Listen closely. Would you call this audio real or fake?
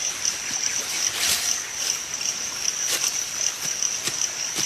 real